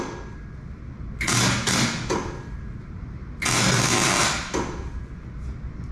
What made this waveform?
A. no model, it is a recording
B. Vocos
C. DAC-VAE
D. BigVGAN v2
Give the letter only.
A